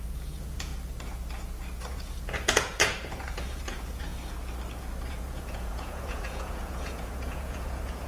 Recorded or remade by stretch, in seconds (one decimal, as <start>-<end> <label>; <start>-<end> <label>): 0.0-0.7 remade; 0.7-1.9 recorded; 1.9-4.1 remade; 4.1-5.1 recorded; 5.1-8.1 remade